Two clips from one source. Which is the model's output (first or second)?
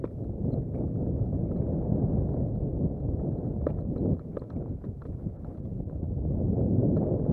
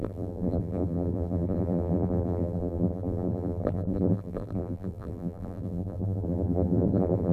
second